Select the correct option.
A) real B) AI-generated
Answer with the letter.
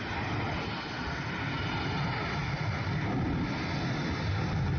A